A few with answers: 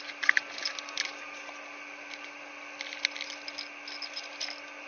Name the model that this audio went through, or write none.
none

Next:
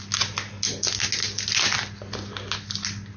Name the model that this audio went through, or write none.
none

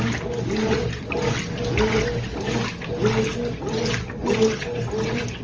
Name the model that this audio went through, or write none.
none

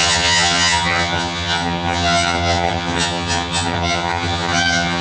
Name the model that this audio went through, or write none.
vocoder, HiFi-GAN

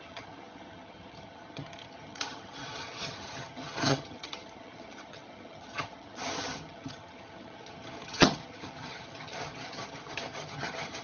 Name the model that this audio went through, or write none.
vocoder, HiFi-GAN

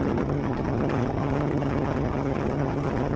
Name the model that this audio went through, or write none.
vocoder, HiFi-GAN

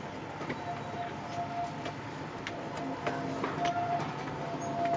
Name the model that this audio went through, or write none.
none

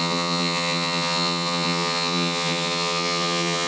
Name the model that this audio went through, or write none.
vocoder, HiFi-GAN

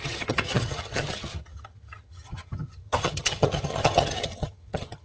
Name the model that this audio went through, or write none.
vocoder, HiFi-GAN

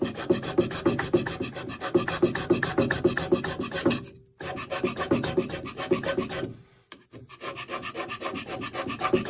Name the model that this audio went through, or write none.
none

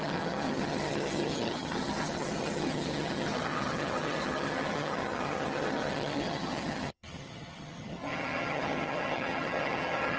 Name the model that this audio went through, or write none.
vocoder, HiFi-GAN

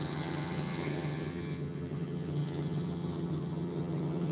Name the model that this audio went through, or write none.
vocoder, HiFi-GAN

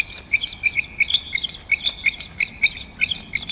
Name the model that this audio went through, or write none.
none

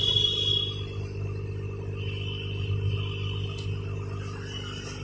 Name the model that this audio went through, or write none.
none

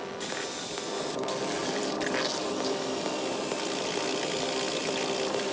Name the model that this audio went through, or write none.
none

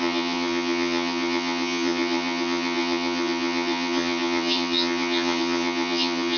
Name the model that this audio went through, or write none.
vocoder, HiFi-GAN